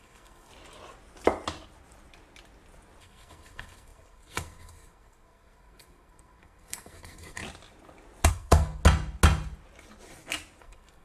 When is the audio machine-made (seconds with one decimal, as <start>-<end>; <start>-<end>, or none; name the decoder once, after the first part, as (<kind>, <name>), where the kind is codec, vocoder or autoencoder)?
0.0-0.5 (codec, SNAC); 3.0-7.4; 8.3-8.8; 10.6-11.0

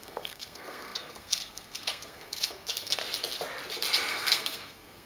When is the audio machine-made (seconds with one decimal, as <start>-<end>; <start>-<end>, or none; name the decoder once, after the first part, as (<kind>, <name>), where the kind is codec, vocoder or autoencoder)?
0.0-3.0 (codec, SNAC); 4.1-5.1

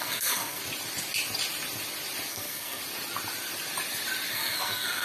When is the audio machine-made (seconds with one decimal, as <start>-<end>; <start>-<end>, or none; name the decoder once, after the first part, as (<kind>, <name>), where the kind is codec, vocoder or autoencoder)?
0.0-0.6 (codec, SNAC); 2.3-2.8; 4.3-5.0

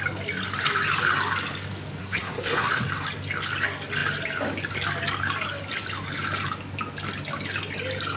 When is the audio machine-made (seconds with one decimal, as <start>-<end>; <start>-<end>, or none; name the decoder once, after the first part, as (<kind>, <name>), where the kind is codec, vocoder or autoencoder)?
2.0-2.7 (codec, SNAC)

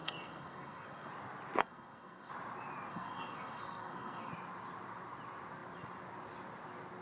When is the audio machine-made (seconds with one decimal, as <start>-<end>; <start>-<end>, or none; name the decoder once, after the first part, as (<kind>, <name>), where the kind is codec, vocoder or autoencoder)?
0.0-1.1 (codec, SNAC); 1.6-2.3; 2.9-4.3